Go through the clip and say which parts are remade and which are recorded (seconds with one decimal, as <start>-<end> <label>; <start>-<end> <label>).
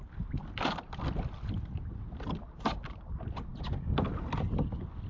0.0-5.1 recorded